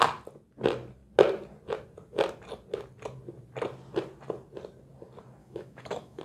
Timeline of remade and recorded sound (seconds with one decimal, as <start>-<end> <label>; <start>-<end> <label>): 0.0-5.4 recorded; 5.4-6.2 remade